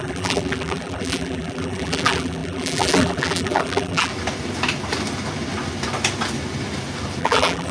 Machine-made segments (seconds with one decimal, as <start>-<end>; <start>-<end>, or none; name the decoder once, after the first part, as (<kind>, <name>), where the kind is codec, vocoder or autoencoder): 0.0-4.1 (vocoder, BigVGAN v2); 7.2-7.7